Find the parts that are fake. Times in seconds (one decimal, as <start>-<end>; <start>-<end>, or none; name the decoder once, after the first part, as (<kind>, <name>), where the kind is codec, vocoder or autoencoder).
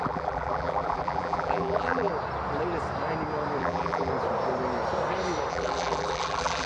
0.0-2.1 (vocoder, BigVGAN v2); 3.6-4.1; 5.5-6.7